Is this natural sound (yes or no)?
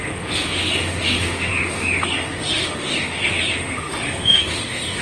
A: no